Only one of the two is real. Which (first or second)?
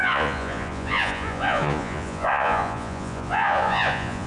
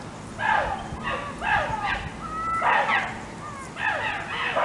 second